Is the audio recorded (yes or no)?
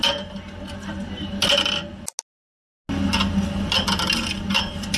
yes